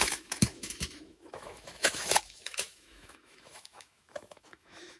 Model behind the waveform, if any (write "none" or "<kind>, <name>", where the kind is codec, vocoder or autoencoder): autoencoder, DAC-VAE